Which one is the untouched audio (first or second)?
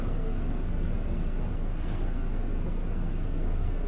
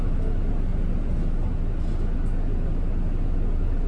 second